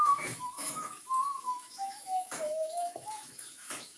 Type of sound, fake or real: fake